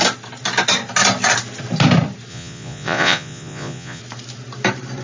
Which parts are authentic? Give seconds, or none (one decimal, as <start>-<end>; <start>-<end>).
0.0-2.3; 4.0-5.0